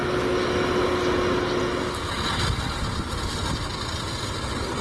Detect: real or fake real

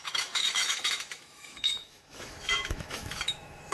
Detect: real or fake fake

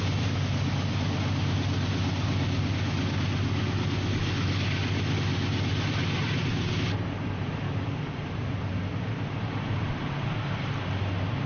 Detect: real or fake real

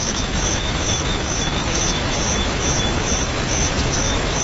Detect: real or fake fake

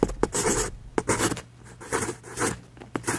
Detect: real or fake real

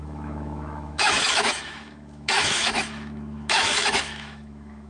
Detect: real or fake fake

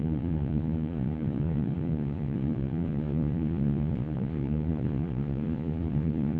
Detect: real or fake fake